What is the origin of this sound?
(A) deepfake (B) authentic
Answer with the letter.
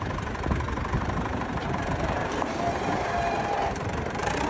A